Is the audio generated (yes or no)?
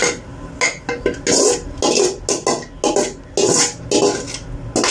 no